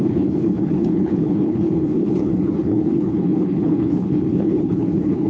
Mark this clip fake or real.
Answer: fake